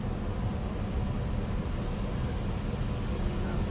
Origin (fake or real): real